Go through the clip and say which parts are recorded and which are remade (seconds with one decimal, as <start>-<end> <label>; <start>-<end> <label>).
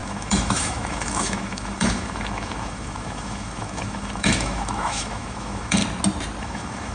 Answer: 0.0-5.8 remade; 5.8-6.4 recorded; 6.4-6.9 remade